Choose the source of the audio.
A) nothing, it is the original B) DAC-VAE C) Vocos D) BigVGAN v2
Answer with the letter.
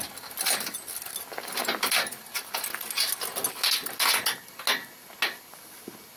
A